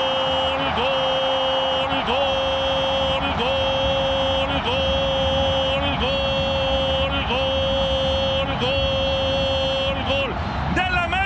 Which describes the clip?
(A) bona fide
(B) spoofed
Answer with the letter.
A